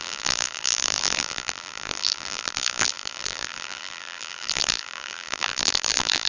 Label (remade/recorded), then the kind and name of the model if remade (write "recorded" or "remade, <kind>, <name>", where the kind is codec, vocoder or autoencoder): remade, vocoder, BigVGAN v2